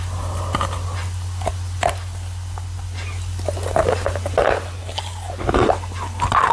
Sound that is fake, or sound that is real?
real